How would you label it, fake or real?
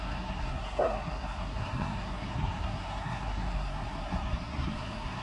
fake